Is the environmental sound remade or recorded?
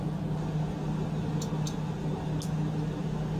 recorded